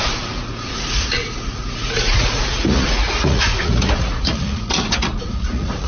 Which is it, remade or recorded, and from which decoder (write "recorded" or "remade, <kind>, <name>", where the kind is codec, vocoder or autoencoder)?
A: remade, vocoder, Vocos